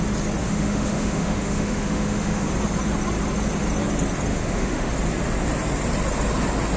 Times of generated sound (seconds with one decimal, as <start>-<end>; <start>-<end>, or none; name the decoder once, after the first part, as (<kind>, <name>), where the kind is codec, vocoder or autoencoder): 0.4-2.5 (autoencoder, DAC-VAE); 4.3-4.9